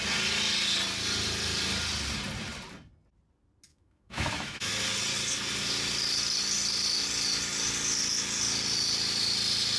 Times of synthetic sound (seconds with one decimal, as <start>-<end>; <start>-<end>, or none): 3.7-4.7